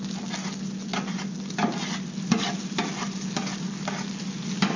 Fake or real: real